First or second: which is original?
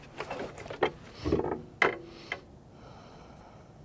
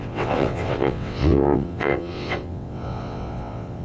first